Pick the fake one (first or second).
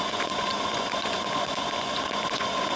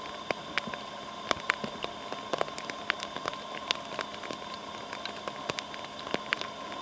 first